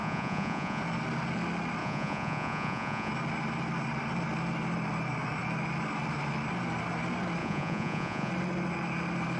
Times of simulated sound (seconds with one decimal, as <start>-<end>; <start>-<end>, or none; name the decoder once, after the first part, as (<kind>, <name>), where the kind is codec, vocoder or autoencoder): 0.0-0.8 (vocoder, Vocos); 1.8-3.1; 7.4-8.3